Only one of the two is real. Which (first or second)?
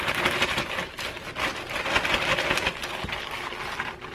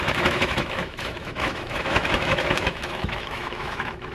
first